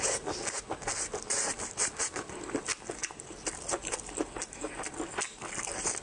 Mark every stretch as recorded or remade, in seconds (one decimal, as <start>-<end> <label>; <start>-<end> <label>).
0.0-6.0 recorded